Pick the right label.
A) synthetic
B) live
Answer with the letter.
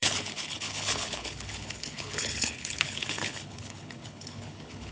A